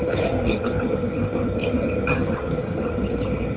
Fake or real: fake